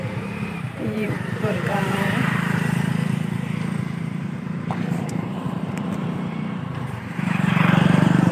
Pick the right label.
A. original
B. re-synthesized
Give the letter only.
B